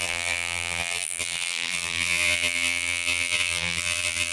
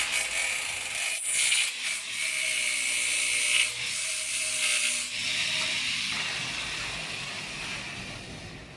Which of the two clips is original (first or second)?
second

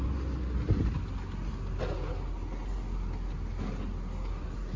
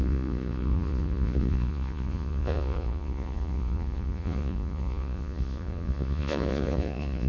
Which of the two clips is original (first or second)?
first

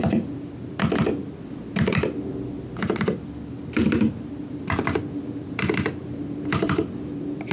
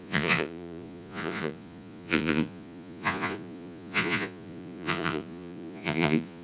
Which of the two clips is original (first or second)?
first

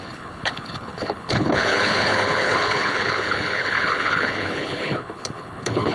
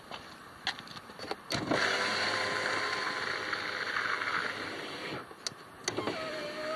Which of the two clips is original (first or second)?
second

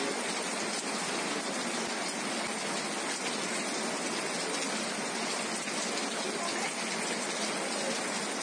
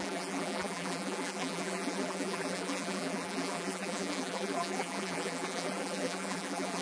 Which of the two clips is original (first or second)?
first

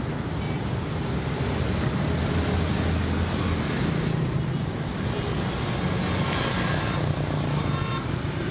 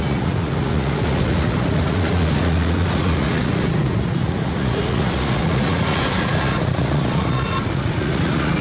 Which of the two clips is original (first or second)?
first